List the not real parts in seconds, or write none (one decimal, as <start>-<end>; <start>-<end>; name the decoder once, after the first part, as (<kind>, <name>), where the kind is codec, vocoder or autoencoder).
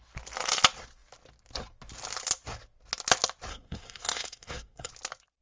3.5-4.9 (codec, SNAC)